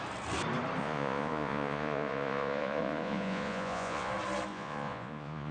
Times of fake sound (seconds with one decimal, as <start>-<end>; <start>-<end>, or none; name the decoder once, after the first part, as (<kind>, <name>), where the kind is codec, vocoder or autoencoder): 0.8-4.1 (vocoder, Vocos); 4.5-5.5